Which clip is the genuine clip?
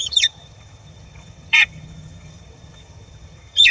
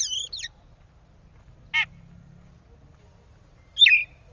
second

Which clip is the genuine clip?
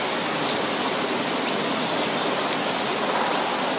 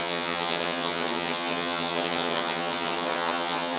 first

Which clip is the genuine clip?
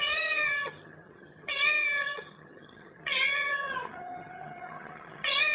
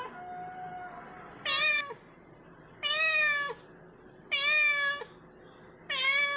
second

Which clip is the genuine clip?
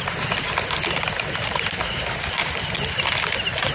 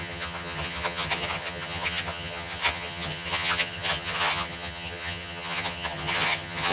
first